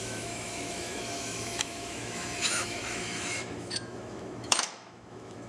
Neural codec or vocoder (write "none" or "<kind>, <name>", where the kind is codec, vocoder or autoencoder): autoencoder, DAC-VAE